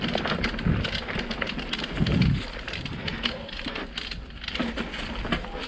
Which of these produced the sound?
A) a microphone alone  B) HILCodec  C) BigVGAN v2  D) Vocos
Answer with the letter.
A